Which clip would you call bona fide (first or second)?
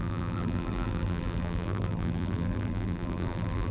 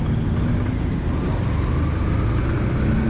second